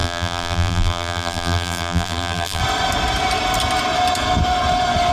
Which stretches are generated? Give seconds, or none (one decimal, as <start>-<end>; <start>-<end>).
0.0-2.6